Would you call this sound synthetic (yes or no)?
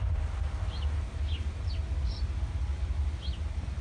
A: no